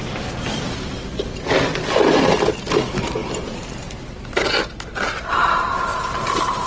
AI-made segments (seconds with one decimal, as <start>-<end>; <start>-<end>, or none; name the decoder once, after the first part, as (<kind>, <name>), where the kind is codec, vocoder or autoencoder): none